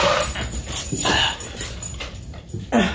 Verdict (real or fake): real